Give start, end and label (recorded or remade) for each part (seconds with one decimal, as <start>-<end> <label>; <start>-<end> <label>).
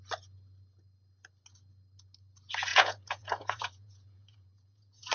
0.0-2.7 recorded; 2.7-5.1 remade